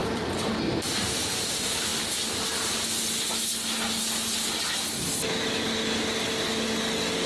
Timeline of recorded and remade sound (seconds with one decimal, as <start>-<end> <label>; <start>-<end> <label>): 0.0-0.9 remade; 0.9-7.3 recorded